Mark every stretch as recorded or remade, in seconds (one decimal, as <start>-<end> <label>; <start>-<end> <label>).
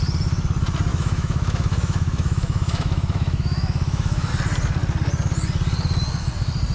0.0-0.9 recorded; 0.9-4.3 remade; 4.3-6.7 recorded